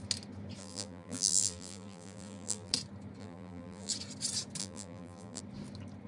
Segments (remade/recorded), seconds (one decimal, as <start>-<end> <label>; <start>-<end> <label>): 0.0-0.6 recorded; 0.6-2.7 remade; 2.7-3.2 recorded; 3.2-3.9 remade; 3.9-4.6 recorded; 4.6-5.4 remade; 5.4-6.1 recorded